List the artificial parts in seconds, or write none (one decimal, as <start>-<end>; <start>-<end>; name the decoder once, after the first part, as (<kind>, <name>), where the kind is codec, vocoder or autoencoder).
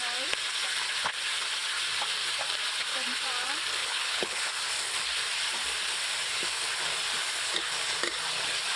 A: 3.8-4.4 (codec, HILCodec)